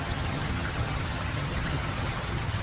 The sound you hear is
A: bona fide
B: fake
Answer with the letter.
B